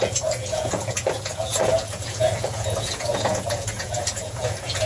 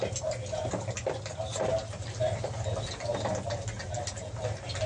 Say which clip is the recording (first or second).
second